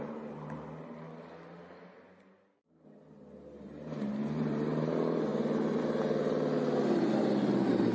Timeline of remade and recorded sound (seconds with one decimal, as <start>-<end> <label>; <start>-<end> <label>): 0.0-7.9 recorded